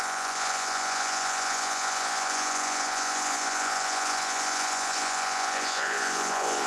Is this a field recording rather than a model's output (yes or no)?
no